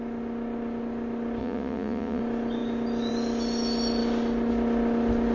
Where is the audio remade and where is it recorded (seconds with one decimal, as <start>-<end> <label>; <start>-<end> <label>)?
0.0-1.4 recorded; 1.4-2.2 remade; 2.2-5.3 recorded